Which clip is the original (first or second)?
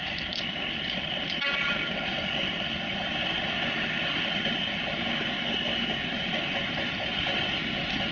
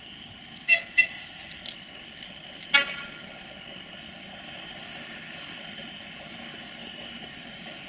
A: second